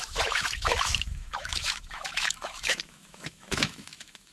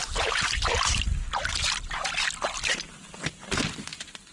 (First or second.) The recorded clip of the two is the second